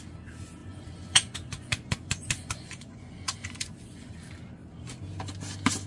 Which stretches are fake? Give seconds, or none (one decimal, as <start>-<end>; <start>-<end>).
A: 0.6-4.1